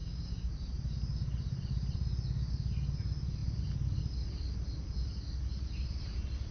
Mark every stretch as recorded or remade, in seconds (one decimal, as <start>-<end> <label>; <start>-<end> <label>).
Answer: 0.0-0.5 remade; 0.5-6.5 recorded